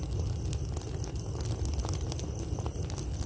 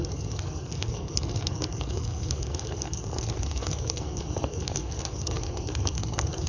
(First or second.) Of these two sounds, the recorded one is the first